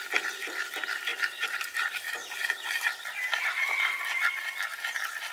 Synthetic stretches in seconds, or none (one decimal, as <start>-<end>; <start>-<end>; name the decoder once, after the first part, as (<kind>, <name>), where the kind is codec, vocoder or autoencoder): none